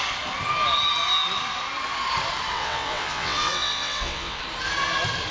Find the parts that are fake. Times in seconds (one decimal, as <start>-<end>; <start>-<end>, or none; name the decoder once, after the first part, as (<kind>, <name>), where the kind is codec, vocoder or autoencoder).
2.5-4.4 (vocoder, WaveNeXt)